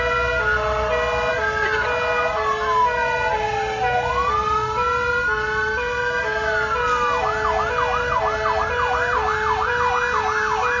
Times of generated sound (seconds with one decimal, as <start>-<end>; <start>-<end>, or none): none

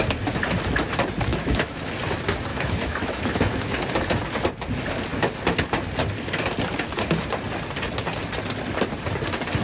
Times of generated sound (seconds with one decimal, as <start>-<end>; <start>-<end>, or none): 1.3-1.9; 2.5-3.7

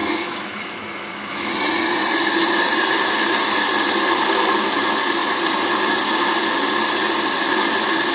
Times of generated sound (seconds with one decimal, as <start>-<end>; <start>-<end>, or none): 0.0-1.5

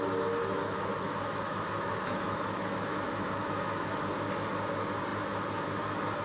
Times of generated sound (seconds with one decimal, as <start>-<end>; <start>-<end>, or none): 0.4-4.1

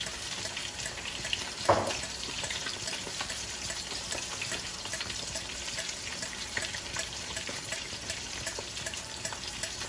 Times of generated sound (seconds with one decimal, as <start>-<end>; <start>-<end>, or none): 0.0-9.9

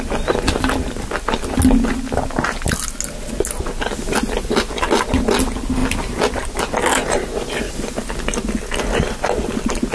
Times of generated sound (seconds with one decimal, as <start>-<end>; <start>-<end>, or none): none